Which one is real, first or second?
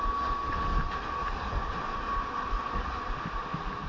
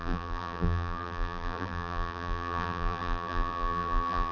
first